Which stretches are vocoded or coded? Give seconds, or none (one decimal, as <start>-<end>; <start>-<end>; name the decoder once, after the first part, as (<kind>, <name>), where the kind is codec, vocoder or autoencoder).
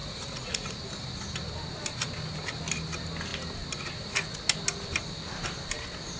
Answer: 0.0-0.7 (vocoder, Vocos)